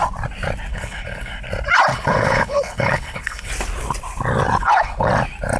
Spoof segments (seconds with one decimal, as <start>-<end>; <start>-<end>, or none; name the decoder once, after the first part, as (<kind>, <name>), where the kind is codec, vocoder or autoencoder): 0.7-1.3 (codec, HILCodec); 1.9-3.5; 4.6-5.1